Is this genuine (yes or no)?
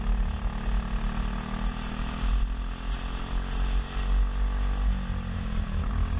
yes